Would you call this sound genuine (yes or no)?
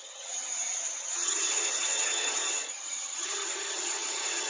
no